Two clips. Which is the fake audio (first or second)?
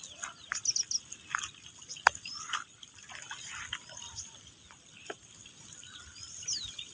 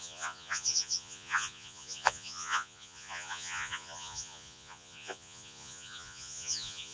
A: second